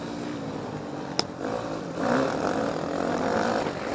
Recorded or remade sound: recorded